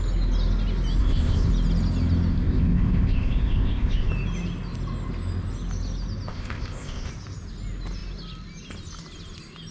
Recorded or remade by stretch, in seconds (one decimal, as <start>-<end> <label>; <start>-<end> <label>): 0.0-1.0 recorded; 1.0-1.5 remade; 1.5-2.3 recorded; 2.3-4.1 remade; 4.1-6.3 recorded; 6.3-7.1 remade; 7.1-9.7 recorded

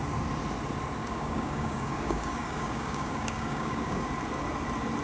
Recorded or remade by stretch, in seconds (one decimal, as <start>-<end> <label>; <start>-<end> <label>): 0.0-1.0 recorded; 1.0-4.0 remade; 4.0-5.0 recorded

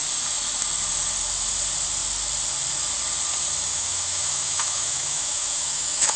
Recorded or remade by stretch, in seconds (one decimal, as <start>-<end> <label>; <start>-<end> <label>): 0.0-3.7 recorded; 3.7-6.2 remade

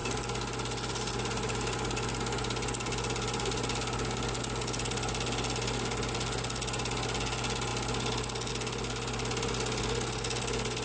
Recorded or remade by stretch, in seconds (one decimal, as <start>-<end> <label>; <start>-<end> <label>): 0.0-4.4 remade; 4.4-10.8 recorded

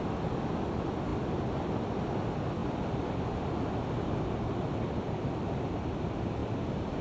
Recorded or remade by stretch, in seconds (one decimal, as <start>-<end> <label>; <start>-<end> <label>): 0.0-7.0 recorded

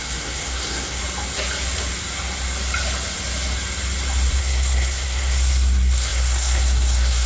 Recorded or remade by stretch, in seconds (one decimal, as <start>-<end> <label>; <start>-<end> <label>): 0.0-1.0 remade; 1.0-4.4 recorded; 4.4-7.3 remade